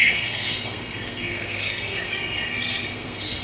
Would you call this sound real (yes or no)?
no